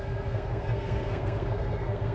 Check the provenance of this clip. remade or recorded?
remade